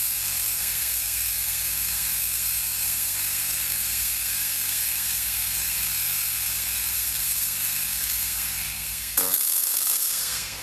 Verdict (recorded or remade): remade